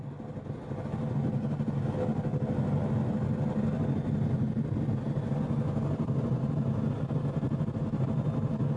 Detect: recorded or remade recorded